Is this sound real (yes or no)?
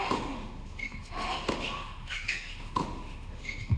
no